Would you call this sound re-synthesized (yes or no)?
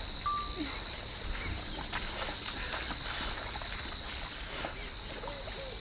no